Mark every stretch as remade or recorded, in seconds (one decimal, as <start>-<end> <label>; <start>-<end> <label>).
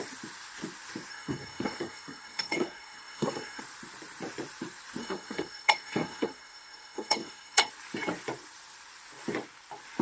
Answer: 0.0-1.1 recorded; 1.1-3.6 remade; 3.6-5.0 recorded; 5.0-7.7 remade; 7.7-10.0 recorded